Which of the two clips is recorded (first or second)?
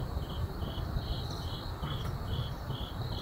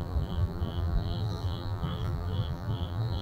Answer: first